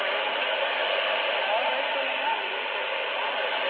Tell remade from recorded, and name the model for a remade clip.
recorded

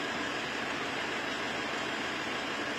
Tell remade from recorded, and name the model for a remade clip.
recorded